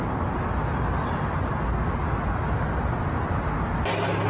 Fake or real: real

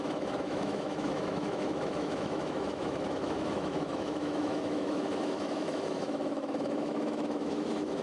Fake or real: fake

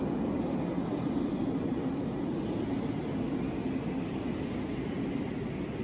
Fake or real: real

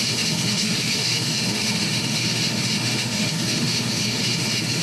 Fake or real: fake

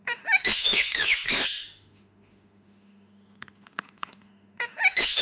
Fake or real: fake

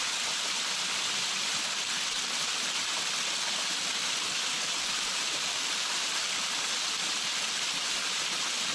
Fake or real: real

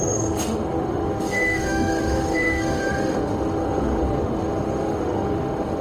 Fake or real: fake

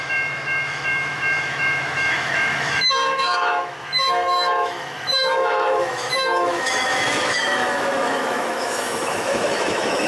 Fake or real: fake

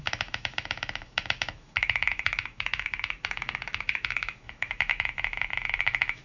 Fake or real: fake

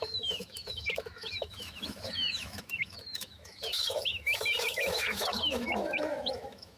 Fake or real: fake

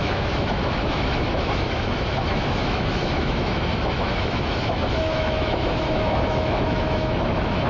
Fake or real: fake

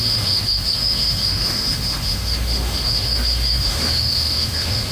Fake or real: fake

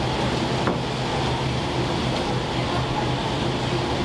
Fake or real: real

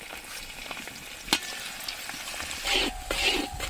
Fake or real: real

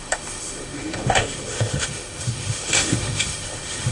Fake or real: fake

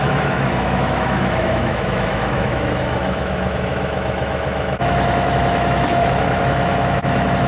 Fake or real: fake